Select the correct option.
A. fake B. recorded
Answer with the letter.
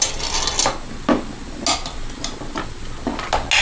B